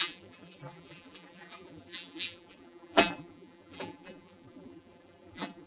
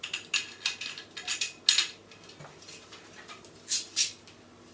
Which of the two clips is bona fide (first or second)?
second